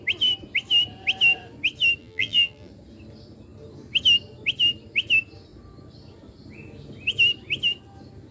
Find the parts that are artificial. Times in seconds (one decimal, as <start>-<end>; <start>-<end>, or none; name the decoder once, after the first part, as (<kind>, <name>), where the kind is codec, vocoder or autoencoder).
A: 2.0-2.7 (vocoder, BigVGAN v2)